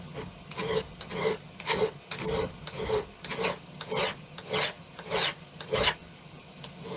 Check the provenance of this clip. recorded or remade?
recorded